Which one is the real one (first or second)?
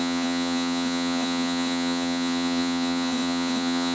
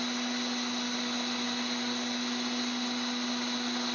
second